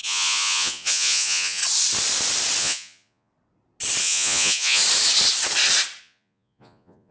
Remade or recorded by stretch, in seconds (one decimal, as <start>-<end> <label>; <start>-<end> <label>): 0.0-1.6 remade; 1.6-2.6 recorded; 2.6-3.3 remade; 3.3-4.0 recorded; 4.0-4.8 remade; 4.8-6.0 recorded; 6.0-7.1 remade